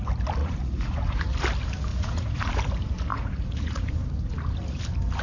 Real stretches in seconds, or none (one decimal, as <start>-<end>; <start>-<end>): 0.0-0.4; 1.3-1.9; 2.5-3.1; 3.9-5.2